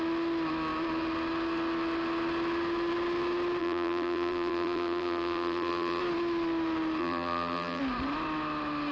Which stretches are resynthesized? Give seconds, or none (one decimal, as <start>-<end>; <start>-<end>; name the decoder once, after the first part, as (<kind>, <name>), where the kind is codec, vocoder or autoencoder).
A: 3.6-6.0 (vocoder, BigVGAN v2); 7.0-7.8